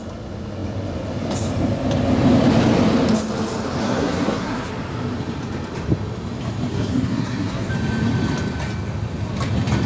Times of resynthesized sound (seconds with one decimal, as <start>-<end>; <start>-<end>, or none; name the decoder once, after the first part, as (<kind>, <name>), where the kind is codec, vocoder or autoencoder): 3.8-4.7 (codec, SNAC); 6.7-7.7